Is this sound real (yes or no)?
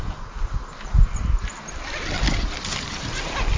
yes